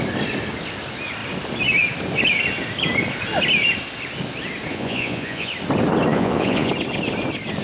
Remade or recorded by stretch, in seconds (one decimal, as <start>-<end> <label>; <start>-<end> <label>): 0.0-4.7 recorded; 4.7-5.5 remade; 5.5-6.1 recorded; 6.1-6.7 remade; 6.7-7.6 recorded